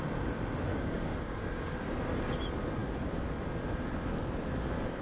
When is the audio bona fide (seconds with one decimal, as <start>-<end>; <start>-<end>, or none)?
0.0-0.7; 1.9-5.0